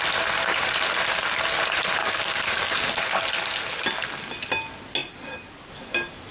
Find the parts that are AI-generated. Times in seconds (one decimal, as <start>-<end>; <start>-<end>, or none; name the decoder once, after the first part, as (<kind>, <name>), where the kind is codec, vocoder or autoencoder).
2.0-2.9 (codec, DAC)